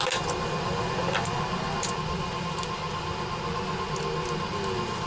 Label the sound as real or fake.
real